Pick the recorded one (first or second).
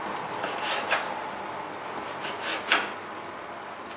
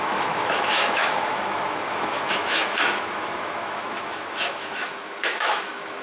first